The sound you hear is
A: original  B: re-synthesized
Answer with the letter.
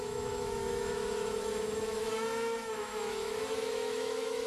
B